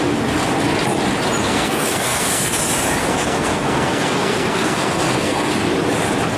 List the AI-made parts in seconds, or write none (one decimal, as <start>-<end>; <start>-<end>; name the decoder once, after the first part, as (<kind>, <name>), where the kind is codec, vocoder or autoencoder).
1.4-2.6 (codec, SNAC); 3.0-5.5